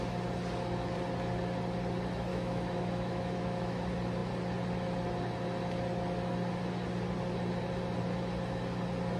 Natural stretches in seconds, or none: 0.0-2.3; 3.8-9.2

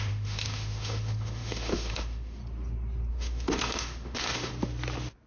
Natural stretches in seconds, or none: 2.4-3.1; 4.5-5.3

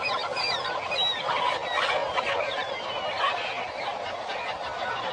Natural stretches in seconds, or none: 0.0-5.1